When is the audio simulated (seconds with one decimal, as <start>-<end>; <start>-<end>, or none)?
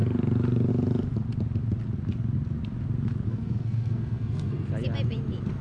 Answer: 3.3-4.7